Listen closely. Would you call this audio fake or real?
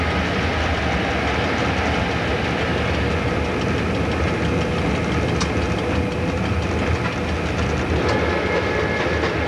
real